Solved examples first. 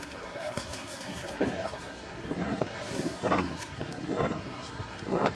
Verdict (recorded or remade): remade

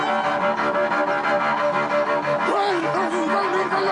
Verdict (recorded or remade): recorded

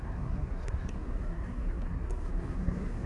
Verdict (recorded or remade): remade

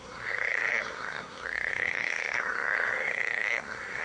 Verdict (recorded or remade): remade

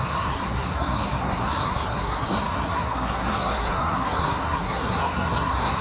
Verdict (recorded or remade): remade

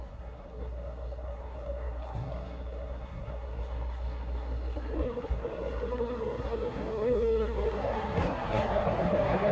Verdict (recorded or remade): remade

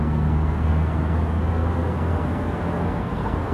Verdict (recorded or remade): remade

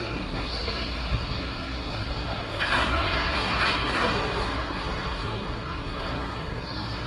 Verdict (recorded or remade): remade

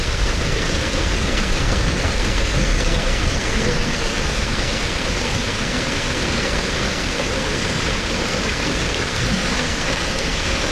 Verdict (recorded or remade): remade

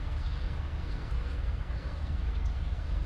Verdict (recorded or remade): remade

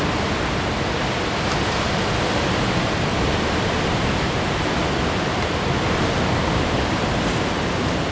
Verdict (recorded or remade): recorded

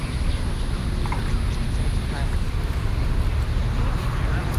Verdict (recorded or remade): recorded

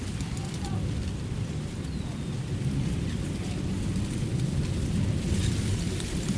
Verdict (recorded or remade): recorded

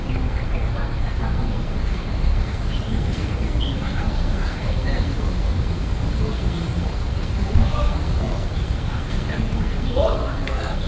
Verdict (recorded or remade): remade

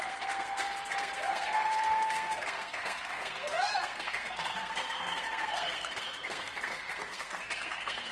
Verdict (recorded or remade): remade